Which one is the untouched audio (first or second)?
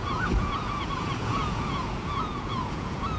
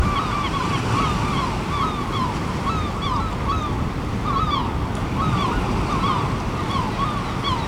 second